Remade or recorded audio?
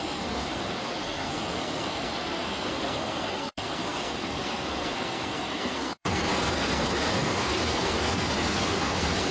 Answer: remade